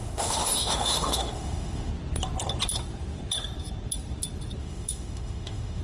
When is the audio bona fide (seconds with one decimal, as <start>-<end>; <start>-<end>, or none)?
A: 1.9-4.6